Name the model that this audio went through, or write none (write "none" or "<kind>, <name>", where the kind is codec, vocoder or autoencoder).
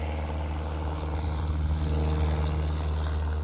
none